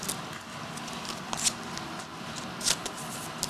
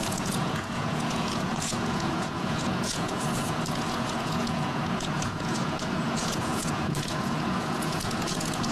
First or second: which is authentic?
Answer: first